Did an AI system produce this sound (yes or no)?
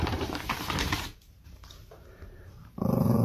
yes